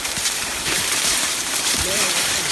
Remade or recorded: remade